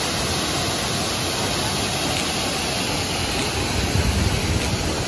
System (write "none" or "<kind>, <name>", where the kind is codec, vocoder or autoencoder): none